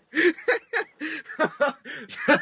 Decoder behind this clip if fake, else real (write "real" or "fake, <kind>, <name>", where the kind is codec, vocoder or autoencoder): real